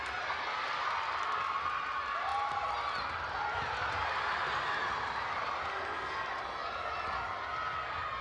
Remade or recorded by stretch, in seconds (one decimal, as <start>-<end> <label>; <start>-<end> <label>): 0.0-8.2 recorded